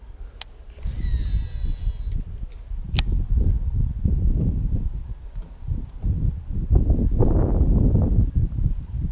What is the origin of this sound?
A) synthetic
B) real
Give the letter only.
B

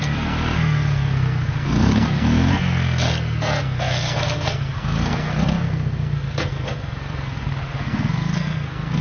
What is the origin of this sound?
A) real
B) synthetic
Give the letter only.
B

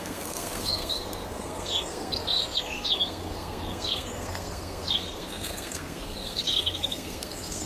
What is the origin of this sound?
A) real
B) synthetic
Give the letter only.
B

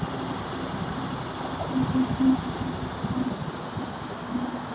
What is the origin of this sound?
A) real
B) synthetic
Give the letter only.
A